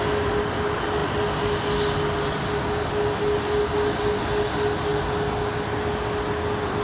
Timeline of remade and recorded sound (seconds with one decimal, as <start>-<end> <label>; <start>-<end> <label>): 0.0-6.8 recorded

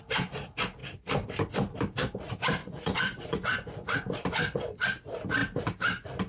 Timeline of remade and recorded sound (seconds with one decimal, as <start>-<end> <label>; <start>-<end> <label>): 0.0-2.6 recorded; 2.6-3.7 remade; 3.7-6.3 recorded

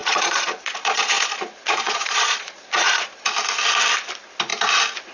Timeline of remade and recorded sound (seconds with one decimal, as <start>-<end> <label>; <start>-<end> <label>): 0.0-3.1 remade; 3.1-5.1 recorded